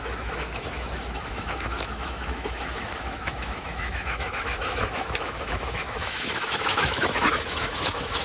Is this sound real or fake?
fake